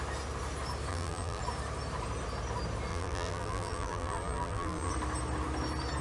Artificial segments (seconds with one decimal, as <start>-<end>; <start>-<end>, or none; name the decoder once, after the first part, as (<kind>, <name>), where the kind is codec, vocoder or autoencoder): 0.9-1.4 (vocoder, BigVGAN v2); 2.9-4.9